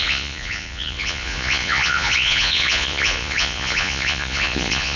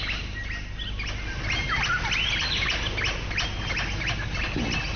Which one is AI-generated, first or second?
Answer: first